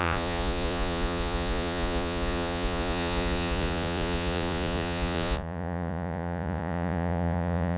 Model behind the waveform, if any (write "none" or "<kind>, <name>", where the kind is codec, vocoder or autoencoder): vocoder, Vocos